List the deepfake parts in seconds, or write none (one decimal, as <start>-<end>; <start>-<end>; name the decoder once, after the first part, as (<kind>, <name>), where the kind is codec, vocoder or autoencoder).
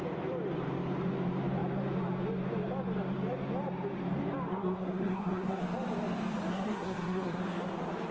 4.5-5.6 (codec, SNAC); 6.5-7.4